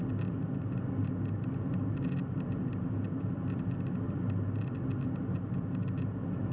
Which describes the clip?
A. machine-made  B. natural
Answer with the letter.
B